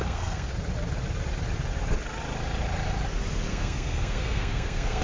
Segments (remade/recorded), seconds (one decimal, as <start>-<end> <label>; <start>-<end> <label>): 0.0-0.5 remade; 0.5-3.5 recorded; 3.5-5.0 remade